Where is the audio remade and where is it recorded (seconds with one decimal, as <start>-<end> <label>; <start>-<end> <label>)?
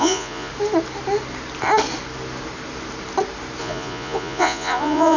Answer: 0.0-0.5 remade; 0.5-3.6 recorded; 3.6-5.2 remade